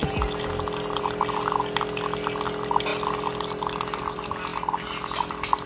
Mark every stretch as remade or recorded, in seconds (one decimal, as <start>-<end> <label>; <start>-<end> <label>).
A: 0.0-5.7 recorded